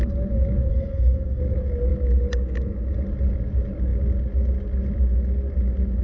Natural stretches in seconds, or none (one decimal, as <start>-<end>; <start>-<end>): 0.0-0.7; 1.4-6.0